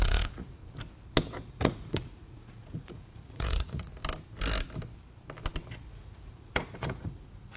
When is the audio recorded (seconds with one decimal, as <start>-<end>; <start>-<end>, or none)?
0.6-1.5; 3.9-5.9